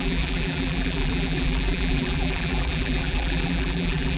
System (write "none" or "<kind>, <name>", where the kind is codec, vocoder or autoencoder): vocoder, BigVGAN v2